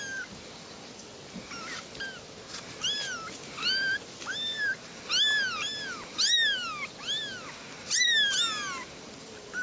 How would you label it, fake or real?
real